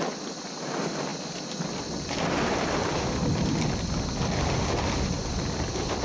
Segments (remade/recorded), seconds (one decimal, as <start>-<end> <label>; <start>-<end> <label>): 0.0-6.0 recorded